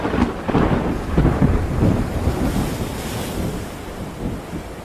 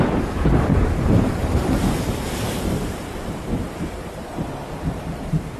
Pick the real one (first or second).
first